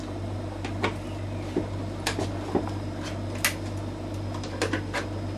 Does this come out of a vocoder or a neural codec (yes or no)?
no